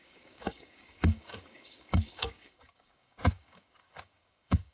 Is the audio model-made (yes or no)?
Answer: yes